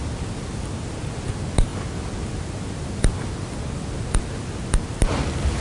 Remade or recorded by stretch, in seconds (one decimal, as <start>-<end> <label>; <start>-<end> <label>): 0.0-5.6 recorded